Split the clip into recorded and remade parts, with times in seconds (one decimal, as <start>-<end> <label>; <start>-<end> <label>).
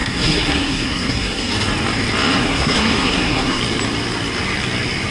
0.0-1.5 remade; 1.5-2.4 recorded; 2.4-3.6 remade; 3.6-5.1 recorded